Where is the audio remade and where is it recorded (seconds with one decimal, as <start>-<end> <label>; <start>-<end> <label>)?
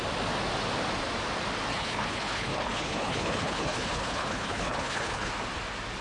0.0-1.7 recorded; 1.7-5.3 remade; 5.3-6.0 recorded